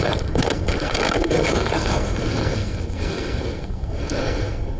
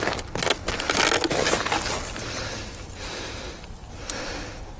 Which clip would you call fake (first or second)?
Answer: first